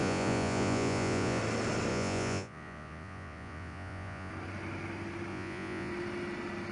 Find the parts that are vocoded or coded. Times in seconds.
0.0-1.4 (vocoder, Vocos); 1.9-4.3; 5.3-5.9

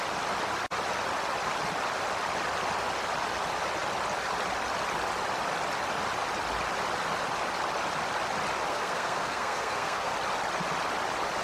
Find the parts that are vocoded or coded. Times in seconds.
8.7-10.1 (codec, SNAC)